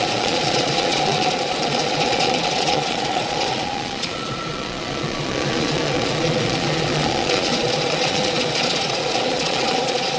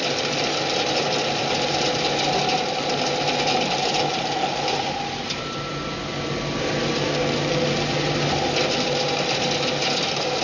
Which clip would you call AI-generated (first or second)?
first